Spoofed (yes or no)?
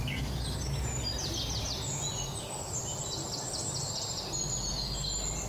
no